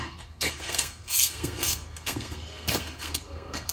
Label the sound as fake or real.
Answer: fake